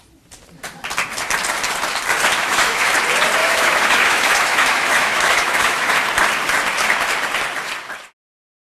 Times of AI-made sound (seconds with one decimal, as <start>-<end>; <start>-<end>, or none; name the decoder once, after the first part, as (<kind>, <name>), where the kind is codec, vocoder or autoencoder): 2.3-2.9 (autoencoder, DAC-VAE); 3.4-5.9